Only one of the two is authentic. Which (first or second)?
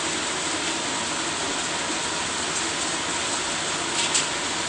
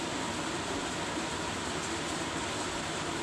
first